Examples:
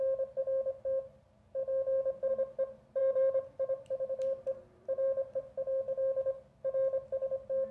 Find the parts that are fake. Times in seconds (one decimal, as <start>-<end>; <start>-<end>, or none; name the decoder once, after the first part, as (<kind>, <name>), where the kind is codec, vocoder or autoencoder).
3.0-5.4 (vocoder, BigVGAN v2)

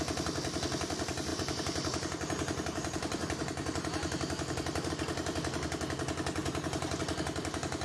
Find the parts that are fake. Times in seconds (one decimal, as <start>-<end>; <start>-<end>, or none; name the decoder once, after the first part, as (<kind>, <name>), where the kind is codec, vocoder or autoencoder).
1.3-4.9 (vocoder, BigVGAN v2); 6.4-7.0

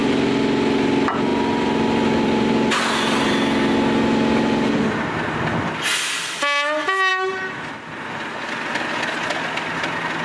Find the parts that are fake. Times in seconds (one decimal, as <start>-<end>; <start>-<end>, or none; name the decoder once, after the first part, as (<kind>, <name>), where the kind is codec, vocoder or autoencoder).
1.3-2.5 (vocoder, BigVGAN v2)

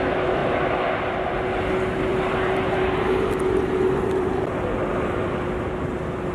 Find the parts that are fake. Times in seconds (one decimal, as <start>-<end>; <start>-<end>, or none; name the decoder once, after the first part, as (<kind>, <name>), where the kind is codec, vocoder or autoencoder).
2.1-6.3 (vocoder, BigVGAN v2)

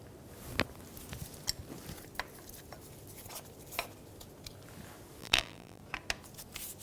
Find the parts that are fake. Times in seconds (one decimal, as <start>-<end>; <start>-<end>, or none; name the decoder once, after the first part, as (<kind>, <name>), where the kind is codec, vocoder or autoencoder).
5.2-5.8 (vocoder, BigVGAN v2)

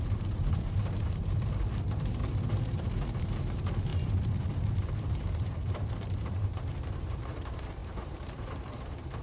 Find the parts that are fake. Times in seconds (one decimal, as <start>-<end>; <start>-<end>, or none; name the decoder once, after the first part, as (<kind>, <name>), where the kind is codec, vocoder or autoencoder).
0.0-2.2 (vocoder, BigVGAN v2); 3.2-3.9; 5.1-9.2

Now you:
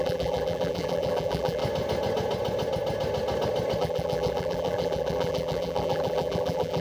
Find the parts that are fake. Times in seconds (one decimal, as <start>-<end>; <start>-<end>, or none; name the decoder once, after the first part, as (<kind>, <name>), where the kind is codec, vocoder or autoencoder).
0.0-1.6 (vocoder, BigVGAN v2); 3.8-6.8

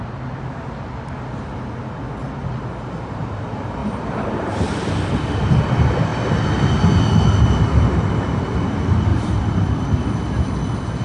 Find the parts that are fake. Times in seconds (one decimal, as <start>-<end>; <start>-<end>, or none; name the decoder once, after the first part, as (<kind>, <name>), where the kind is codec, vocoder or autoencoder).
3.8-4.9 (vocoder, BigVGAN v2); 9.1-10.0